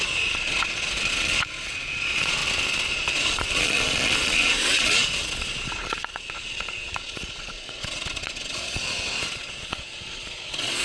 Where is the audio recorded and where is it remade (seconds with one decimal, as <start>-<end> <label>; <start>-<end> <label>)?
0.0-2.4 remade; 2.4-2.9 recorded; 2.9-10.8 remade